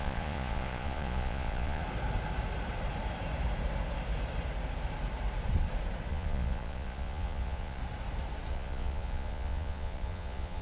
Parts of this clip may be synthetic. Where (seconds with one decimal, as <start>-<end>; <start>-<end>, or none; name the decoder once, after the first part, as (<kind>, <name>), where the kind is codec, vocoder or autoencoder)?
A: 0.0-1.8 (vocoder, Vocos); 6.1-7.8; 8.5-10.6